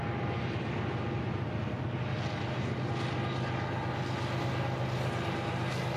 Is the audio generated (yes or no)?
no